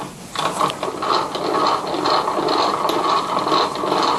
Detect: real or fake real